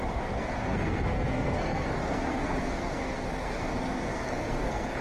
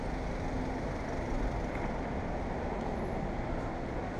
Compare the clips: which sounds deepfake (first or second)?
first